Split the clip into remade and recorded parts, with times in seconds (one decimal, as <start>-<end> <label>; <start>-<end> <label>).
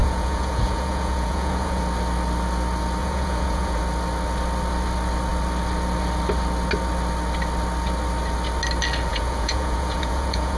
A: 0.0-1.8 remade; 1.8-3.0 recorded; 3.0-3.8 remade; 3.8-9.1 recorded; 9.1-10.6 remade